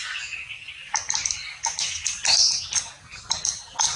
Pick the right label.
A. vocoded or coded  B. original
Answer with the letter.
B